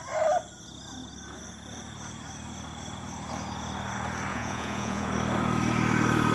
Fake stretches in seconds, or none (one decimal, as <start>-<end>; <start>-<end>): 4.3-5.1